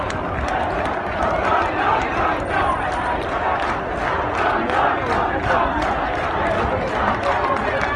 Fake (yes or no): no